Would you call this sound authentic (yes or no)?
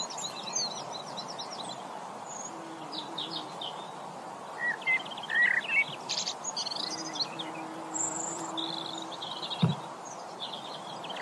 yes